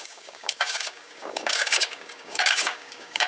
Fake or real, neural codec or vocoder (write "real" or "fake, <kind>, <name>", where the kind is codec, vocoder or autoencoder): fake, codec, DAC